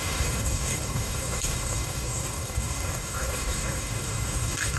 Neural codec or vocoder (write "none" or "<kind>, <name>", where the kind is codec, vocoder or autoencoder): codec, DAC